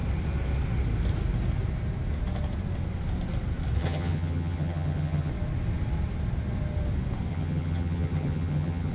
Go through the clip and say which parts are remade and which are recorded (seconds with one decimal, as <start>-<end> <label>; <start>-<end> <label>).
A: 0.0-3.8 recorded; 3.8-5.3 remade; 5.3-7.3 recorded; 7.3-8.9 remade